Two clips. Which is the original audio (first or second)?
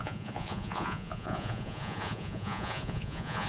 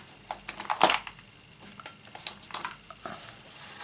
second